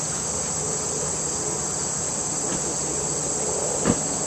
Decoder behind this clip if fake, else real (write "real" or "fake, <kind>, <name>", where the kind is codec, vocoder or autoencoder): real